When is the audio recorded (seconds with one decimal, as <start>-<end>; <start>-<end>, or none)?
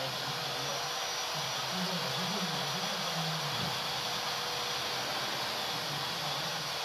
0.0-6.8